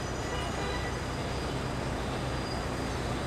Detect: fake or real real